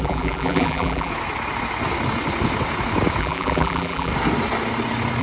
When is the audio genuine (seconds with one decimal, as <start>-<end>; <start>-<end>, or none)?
1.1-3.2; 4.1-5.2